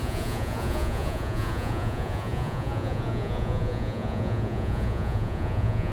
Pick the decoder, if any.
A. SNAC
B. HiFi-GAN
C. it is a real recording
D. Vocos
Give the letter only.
D